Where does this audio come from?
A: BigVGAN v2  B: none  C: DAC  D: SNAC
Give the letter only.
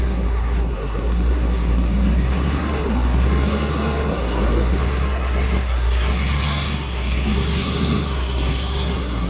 D